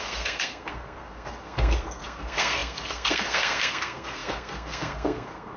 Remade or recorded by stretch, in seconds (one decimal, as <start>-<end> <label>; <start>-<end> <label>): 0.0-5.6 remade